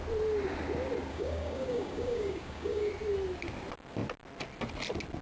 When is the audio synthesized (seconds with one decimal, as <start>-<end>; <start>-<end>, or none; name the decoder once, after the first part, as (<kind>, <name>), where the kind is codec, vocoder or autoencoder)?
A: 1.1-2.9 (codec, DAC)